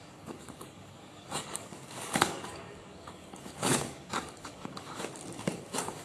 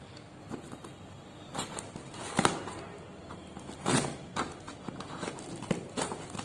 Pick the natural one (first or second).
second